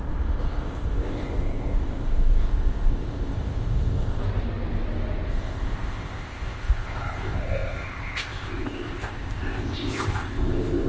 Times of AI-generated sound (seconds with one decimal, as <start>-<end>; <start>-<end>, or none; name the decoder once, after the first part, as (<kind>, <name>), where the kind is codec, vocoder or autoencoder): 0.0-4.2 (codec, ZipCodec); 5.3-10.9